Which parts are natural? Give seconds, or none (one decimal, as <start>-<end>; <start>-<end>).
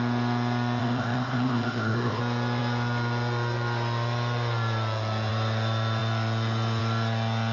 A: 0.0-0.8; 2.2-7.5